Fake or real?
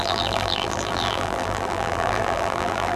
fake